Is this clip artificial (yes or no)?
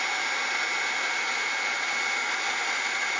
no